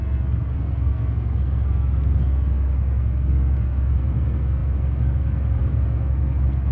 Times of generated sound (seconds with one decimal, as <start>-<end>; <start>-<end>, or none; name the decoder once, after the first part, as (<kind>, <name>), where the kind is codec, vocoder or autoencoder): 0.0-6.7 (codec, SNAC)